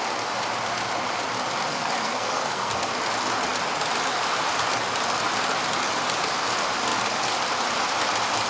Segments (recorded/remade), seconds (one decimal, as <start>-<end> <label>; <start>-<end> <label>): 0.0-1.7 recorded; 1.7-2.9 remade; 2.9-8.5 recorded